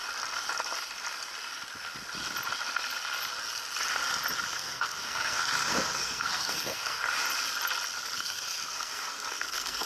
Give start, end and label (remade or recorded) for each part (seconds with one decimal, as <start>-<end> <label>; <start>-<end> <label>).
0.0-4.5 recorded; 4.5-7.0 remade; 7.0-8.0 recorded; 8.0-9.9 remade